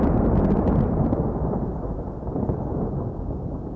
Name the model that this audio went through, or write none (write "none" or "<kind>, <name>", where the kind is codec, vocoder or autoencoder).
none